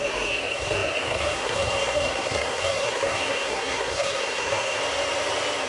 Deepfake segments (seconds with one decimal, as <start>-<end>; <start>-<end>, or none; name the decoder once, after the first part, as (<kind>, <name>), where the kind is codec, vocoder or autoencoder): 0.0-4.8 (codec, SNAC)